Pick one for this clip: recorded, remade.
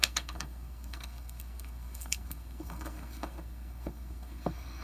remade